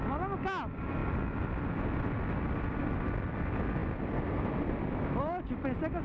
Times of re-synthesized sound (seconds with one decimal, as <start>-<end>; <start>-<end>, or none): none